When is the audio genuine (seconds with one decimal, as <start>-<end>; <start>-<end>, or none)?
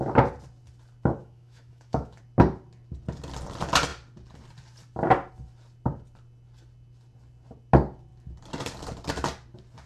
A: 0.0-1.2; 2.2-9.9